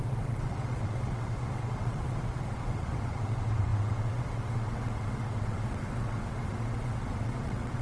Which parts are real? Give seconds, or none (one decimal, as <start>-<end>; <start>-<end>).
none